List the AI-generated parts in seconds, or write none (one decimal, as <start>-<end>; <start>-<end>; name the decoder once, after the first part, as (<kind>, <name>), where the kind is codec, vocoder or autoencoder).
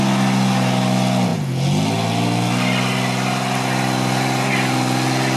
1.3-4.5 (vocoder, BigVGAN v2)